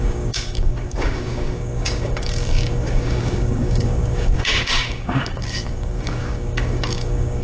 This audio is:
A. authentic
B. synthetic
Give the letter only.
B